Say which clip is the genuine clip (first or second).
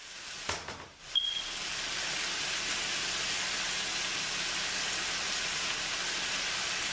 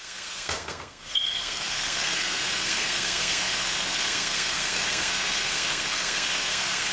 first